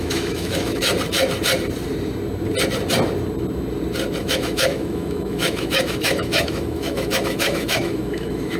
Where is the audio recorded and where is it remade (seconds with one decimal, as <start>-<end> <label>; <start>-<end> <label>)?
0.0-0.9 remade; 0.9-4.2 recorded; 4.2-8.6 remade